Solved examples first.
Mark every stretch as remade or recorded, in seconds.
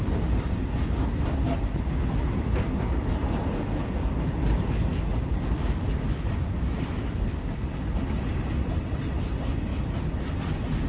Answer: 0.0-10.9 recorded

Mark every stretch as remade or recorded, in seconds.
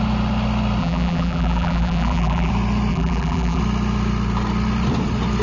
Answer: 0.0-0.8 recorded; 0.8-2.5 remade; 2.5-2.9 recorded; 2.9-3.6 remade; 3.6-5.4 recorded